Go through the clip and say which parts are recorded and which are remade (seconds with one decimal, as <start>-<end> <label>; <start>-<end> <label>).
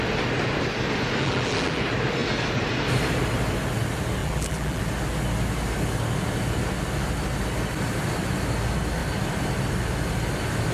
0.0-1.2 recorded; 1.2-1.8 remade; 1.8-4.2 recorded; 4.2-4.8 remade; 4.8-10.7 recorded